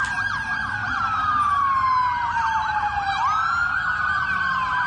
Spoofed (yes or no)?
no